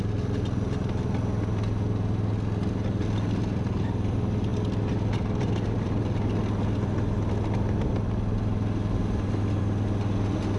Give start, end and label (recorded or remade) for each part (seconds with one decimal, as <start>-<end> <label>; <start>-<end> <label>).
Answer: 0.0-10.6 recorded